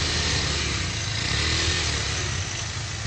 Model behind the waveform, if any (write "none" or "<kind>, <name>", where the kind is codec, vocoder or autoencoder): none